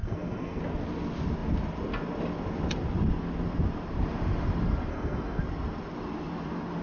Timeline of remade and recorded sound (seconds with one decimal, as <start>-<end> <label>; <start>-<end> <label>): 0.0-0.6 remade; 0.6-4.9 recorded; 4.9-5.4 remade; 5.4-6.8 recorded